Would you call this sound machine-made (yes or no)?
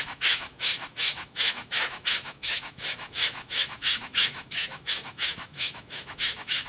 yes